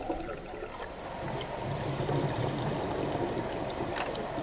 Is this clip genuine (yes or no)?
yes